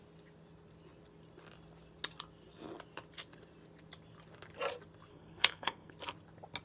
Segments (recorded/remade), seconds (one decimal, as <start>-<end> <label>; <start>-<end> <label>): 0.0-5.1 recorded; 5.1-5.9 remade; 5.9-6.6 recorded